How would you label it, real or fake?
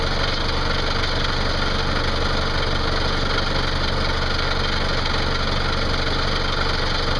real